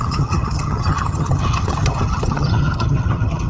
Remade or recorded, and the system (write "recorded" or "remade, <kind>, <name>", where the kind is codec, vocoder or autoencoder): remade, vocoder, HiFi-GAN